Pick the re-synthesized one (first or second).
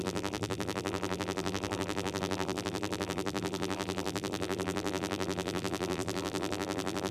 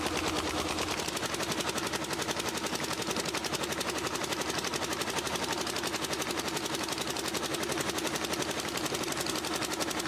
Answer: first